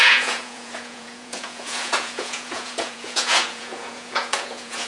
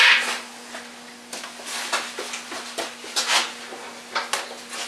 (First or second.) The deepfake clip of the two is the first